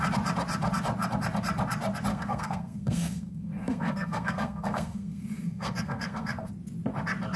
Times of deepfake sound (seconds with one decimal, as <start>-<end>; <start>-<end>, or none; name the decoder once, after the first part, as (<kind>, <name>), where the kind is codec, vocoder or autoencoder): 2.1-6.5 (codec, SNAC)

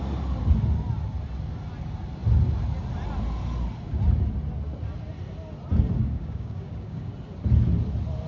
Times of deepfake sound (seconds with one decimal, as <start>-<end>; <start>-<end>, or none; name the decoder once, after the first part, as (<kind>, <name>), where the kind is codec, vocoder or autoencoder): 6.0-7.1 (codec, DAC)